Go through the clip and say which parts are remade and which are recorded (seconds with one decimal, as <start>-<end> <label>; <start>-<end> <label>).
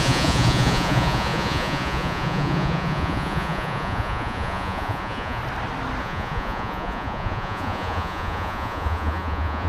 0.0-5.4 remade; 5.4-6.0 recorded; 6.0-9.7 remade